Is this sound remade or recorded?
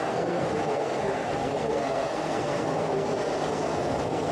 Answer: remade